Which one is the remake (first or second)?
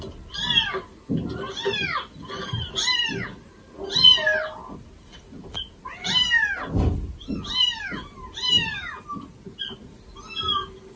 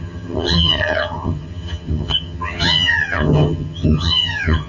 second